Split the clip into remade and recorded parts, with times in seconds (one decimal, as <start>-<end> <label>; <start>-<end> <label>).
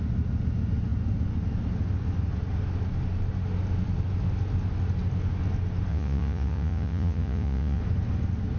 0.0-5.9 recorded; 5.9-7.8 remade; 7.8-8.6 recorded